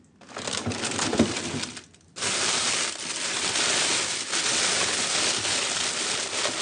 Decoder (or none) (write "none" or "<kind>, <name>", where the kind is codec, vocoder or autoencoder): none